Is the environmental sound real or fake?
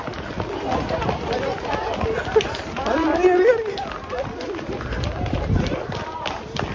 real